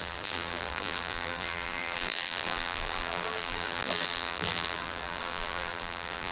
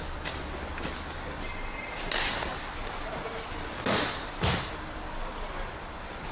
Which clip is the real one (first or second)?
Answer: second